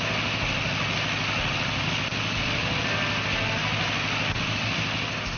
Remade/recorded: recorded